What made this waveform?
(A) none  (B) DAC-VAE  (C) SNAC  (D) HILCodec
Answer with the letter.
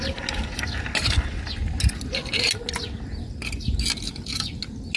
A